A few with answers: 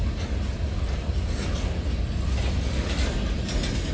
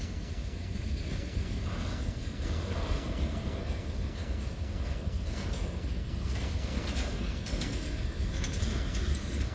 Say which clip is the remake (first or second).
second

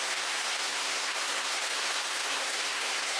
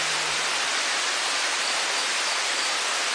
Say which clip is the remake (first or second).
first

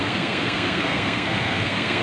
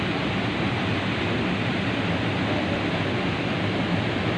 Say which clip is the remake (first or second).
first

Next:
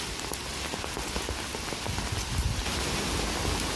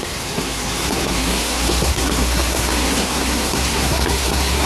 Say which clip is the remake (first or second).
second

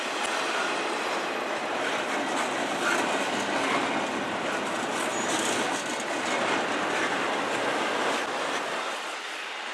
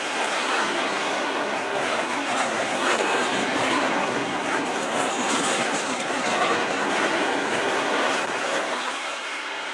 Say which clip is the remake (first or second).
second